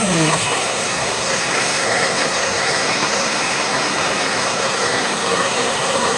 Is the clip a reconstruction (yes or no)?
yes